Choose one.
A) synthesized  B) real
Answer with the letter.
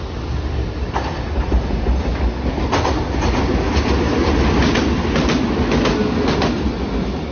B